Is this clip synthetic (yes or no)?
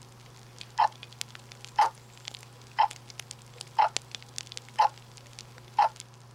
no